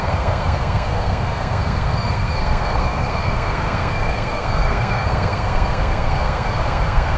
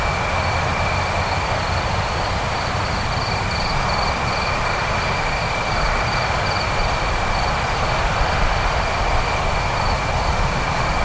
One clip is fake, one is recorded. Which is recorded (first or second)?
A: second